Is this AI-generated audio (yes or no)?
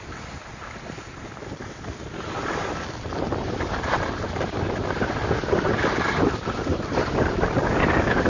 no